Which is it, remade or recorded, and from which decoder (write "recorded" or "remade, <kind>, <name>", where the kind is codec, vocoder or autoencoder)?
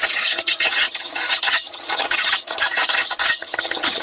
remade, vocoder, HiFi-GAN